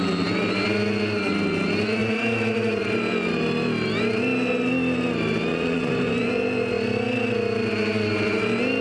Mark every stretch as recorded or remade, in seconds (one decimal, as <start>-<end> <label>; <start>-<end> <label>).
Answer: 0.0-5.5 recorded; 5.5-6.3 remade; 6.3-8.8 recorded